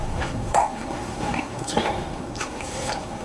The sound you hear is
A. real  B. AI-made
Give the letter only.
B